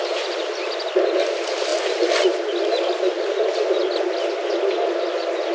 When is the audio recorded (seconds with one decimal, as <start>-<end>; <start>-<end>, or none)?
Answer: 0.0-5.5